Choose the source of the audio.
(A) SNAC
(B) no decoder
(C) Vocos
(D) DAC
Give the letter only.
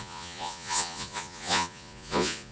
C